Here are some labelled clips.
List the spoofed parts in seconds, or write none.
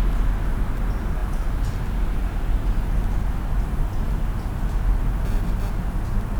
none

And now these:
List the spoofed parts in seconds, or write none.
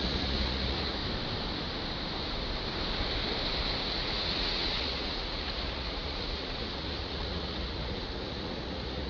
0.0-1.0; 3.8-9.1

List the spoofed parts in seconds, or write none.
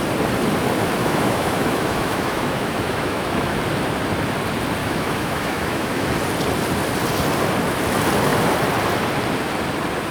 1.0-3.6; 4.8-6.1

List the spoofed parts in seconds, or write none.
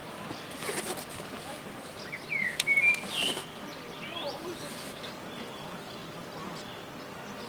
none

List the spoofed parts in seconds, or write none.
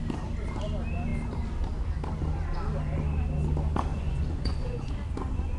3.9-4.9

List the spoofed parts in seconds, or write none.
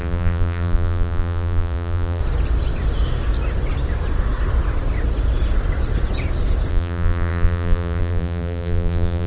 0.0-2.2; 6.7-9.3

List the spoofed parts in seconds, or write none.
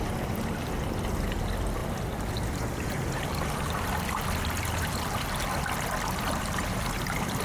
none